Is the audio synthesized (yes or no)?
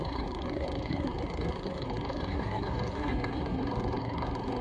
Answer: yes